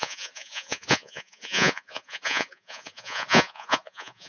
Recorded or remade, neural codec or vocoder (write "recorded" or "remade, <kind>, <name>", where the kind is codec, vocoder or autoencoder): remade, vocoder, Vocos